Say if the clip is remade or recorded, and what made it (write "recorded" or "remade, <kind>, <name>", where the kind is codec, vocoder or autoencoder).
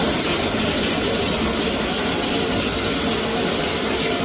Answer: recorded